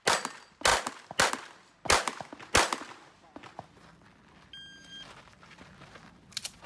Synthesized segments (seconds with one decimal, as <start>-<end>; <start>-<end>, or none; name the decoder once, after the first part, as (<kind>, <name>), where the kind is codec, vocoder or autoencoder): none